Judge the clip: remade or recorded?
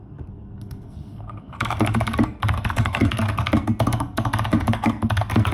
remade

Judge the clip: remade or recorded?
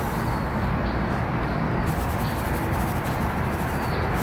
recorded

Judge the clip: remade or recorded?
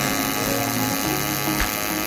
recorded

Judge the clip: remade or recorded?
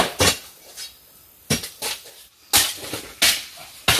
recorded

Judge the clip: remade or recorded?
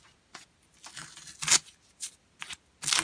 recorded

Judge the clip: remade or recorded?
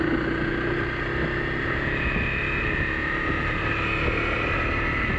recorded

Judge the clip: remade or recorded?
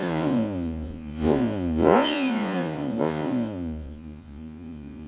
remade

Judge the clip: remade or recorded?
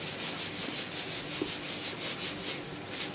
recorded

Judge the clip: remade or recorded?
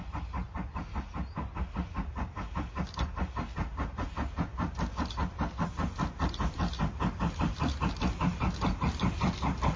recorded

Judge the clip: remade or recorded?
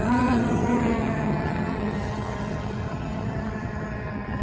remade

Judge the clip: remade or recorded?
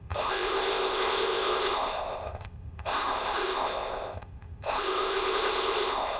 remade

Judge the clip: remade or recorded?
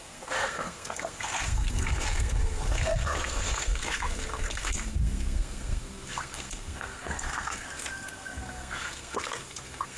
remade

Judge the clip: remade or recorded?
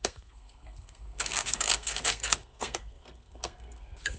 remade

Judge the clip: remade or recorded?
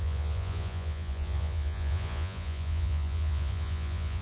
remade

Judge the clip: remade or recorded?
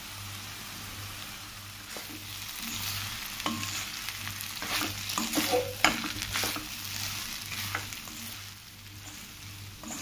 recorded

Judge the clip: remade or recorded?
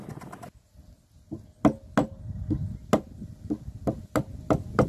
recorded